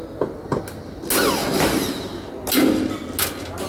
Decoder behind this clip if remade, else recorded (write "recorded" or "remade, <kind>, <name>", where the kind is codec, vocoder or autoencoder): recorded